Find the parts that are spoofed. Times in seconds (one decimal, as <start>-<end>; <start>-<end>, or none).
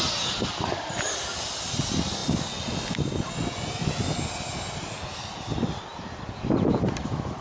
none